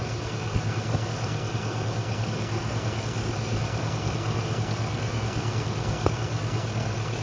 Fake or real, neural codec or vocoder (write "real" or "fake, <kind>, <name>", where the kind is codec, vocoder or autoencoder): fake, codec, SNAC